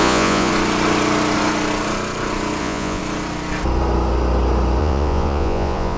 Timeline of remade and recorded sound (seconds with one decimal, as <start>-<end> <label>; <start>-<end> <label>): 0.0-0.5 remade; 0.5-2.6 recorded; 2.6-3.0 remade; 3.0-4.8 recorded; 4.8-6.0 remade